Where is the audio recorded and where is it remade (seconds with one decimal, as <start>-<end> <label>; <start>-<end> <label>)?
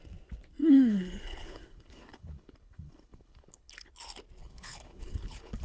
0.0-0.6 recorded; 0.6-3.9 remade; 3.9-4.4 recorded; 4.4-5.6 remade